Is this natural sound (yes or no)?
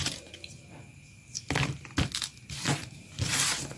yes